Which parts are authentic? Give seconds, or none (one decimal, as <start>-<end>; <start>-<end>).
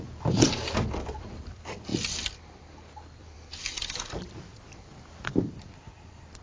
none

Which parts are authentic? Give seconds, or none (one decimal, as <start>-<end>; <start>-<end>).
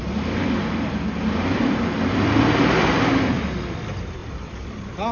0.0-0.6; 2.6-4.2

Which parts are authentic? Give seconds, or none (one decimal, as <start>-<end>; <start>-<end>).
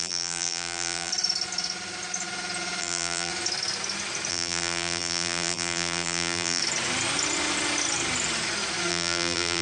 1.1-2.8; 3.3-4.3; 6.6-8.9